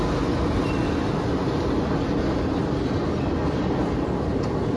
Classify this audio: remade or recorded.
recorded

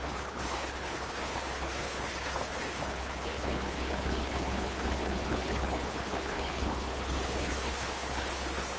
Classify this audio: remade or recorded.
remade